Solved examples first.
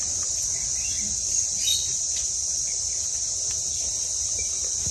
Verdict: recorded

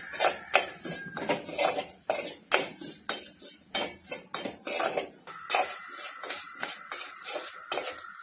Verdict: recorded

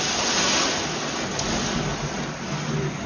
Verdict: recorded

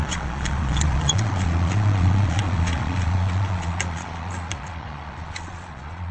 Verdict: remade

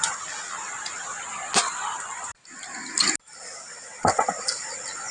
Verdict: recorded